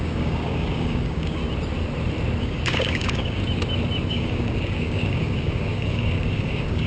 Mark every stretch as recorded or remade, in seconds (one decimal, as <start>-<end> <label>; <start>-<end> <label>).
0.0-1.4 remade; 1.4-2.4 recorded; 2.4-3.4 remade; 3.4-4.1 recorded; 4.1-6.9 remade